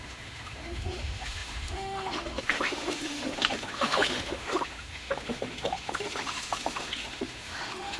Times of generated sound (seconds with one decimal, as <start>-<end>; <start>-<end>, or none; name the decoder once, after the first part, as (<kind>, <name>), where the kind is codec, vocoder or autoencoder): 0.0-8.0 (autoencoder, DAC-VAE)